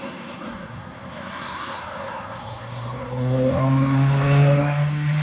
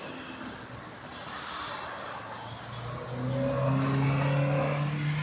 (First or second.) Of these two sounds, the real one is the second